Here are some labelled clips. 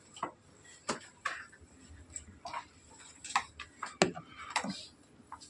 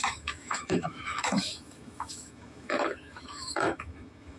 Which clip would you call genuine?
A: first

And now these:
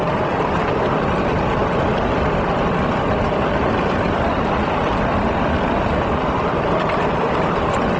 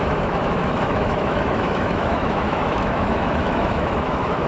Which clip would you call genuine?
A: first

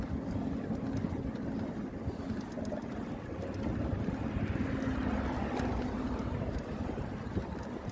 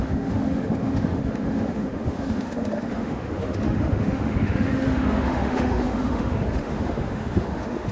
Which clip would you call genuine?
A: first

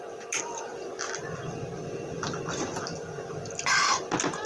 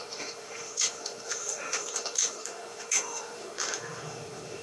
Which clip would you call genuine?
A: first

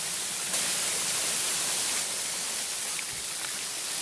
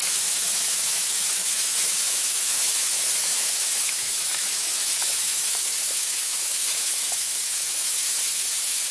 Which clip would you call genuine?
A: first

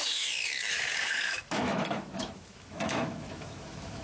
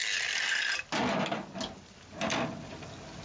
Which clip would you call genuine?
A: second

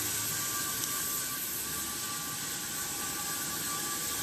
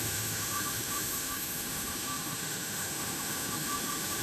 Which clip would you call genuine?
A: first